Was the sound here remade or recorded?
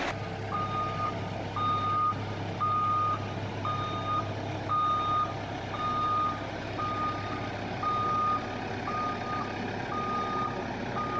recorded